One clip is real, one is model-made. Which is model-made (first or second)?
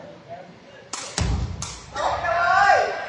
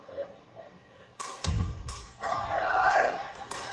second